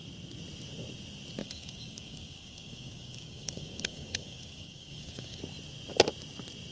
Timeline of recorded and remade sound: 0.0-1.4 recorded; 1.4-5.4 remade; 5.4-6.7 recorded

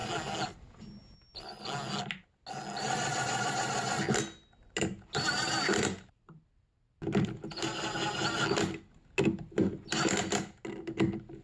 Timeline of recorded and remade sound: 0.0-11.4 recorded

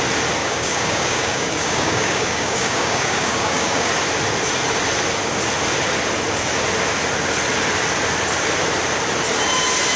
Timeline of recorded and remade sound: 0.0-0.4 recorded; 0.4-3.9 remade; 3.9-10.0 recorded

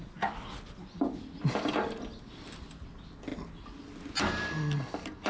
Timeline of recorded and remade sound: 0.0-5.3 recorded

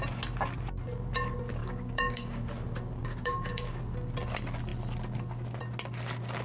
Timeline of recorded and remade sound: 0.0-1.6 recorded; 1.6-2.5 remade; 2.5-3.0 recorded; 3.0-3.8 remade; 3.8-6.4 recorded

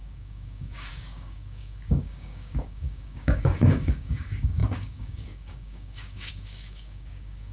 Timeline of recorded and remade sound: 0.0-7.5 remade

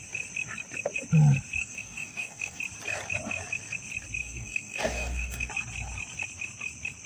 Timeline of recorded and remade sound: 0.0-1.6 recorded; 1.6-2.6 remade; 2.6-4.2 recorded; 4.2-5.5 remade; 5.5-7.1 recorded

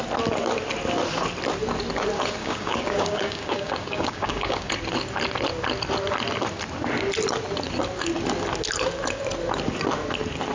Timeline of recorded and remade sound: 0.0-2.4 recorded; 2.4-4.7 remade; 4.7-10.5 recorded